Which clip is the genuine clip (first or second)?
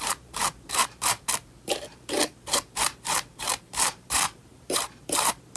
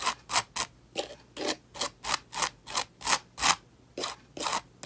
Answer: second